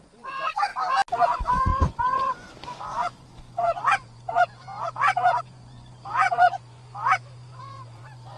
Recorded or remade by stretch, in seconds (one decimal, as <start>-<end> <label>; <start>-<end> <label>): 0.0-0.7 remade; 0.7-1.2 recorded; 1.2-8.4 remade